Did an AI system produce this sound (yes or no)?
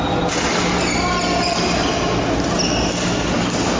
no